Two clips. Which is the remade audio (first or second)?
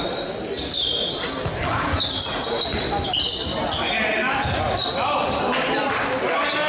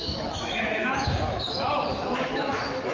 second